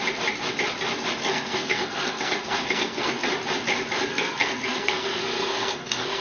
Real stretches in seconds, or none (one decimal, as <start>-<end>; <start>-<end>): 0.0-1.2; 3.3-4.1